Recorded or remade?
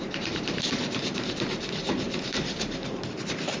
remade